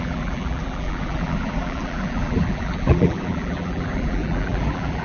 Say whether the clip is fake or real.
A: fake